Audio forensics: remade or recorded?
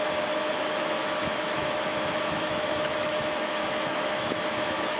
remade